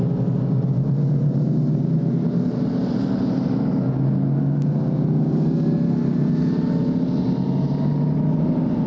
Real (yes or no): yes